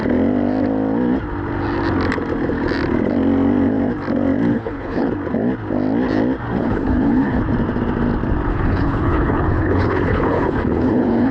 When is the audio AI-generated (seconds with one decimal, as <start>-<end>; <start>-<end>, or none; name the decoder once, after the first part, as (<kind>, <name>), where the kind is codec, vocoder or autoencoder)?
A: 4.5-5.1 (codec, HILCodec); 6.6-7.4; 8.5-11.3

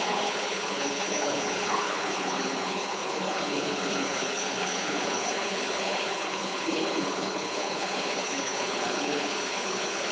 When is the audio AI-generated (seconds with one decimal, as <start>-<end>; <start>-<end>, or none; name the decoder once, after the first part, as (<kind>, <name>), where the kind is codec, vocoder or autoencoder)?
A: 0.0-10.1 (codec, HILCodec)

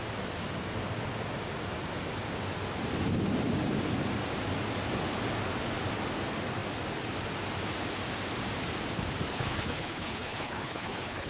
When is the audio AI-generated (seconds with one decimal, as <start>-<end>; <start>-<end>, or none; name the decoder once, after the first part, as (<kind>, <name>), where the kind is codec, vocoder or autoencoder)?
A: 9.3-11.3 (codec, HILCodec)

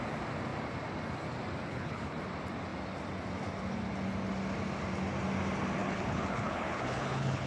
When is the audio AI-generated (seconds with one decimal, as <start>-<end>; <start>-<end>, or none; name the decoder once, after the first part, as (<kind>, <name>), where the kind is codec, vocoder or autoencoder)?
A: 1.7-2.2 (codec, HILCodec); 5.8-7.5

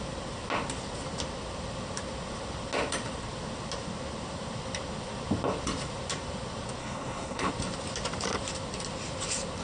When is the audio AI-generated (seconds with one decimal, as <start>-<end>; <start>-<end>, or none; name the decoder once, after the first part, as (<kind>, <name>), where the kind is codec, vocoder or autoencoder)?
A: 6.8-7.5 (codec, HILCodec)

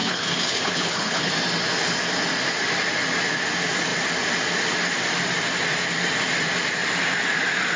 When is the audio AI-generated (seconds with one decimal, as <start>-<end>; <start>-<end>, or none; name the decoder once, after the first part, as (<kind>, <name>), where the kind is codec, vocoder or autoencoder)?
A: 0.0-1.3 (codec, HILCodec)